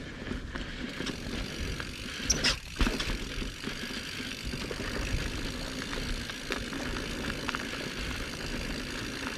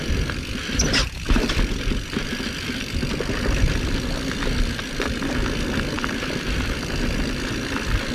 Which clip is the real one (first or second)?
first